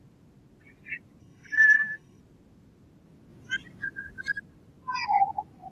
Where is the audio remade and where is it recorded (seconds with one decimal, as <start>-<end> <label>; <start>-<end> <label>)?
0.0-1.2 recorded; 1.2-2.2 remade; 2.2-5.7 recorded